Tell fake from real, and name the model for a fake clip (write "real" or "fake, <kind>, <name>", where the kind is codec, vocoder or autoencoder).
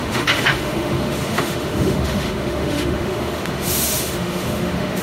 fake, autoencoder, DAC-VAE